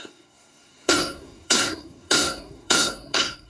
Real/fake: fake